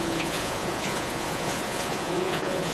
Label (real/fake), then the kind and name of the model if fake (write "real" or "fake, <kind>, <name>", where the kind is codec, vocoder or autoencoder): fake, vocoder, Vocos